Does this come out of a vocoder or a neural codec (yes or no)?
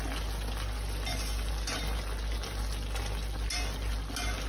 no